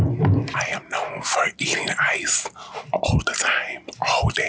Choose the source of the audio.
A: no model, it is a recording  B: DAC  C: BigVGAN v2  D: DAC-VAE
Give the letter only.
C